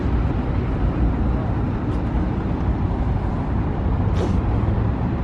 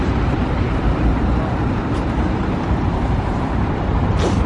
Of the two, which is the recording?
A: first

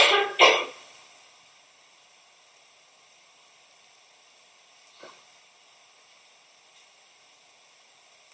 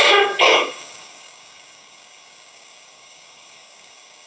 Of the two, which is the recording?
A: first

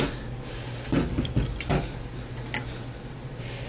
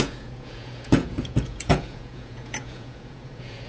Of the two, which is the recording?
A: first